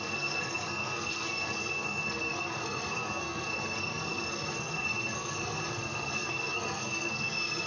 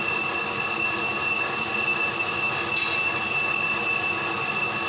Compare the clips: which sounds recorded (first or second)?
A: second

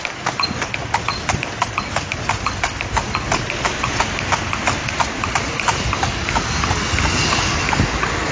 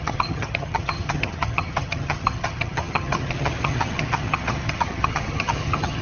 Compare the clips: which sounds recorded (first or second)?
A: first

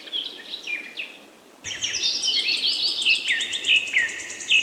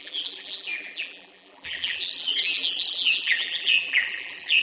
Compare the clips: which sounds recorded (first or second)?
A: first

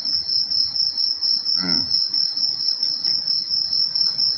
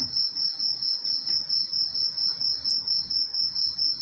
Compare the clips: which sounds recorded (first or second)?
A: second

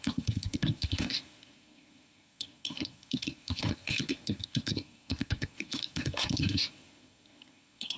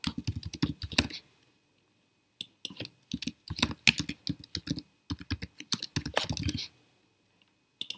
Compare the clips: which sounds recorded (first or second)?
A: second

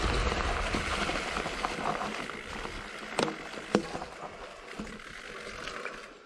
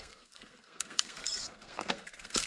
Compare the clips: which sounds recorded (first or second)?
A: first